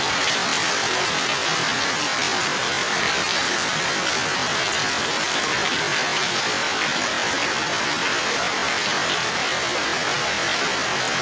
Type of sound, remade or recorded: recorded